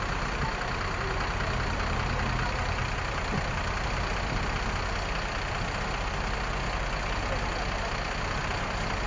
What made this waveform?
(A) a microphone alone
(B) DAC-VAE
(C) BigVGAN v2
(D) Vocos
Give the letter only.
A